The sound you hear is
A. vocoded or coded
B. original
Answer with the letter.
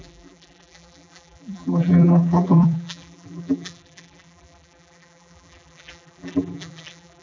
A